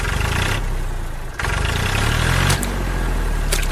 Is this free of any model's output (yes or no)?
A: yes